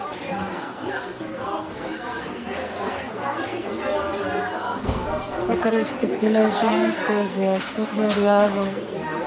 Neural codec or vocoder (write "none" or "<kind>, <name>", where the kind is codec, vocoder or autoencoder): codec, SNAC